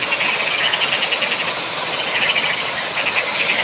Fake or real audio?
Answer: real